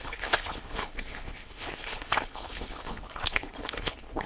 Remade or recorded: remade